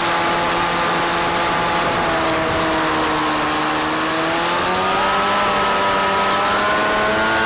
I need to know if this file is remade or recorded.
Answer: recorded